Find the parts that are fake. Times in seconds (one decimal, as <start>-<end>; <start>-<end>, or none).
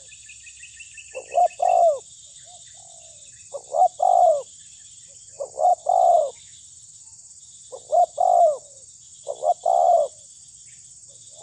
none